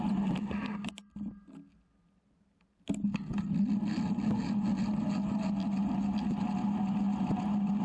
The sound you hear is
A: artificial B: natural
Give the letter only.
B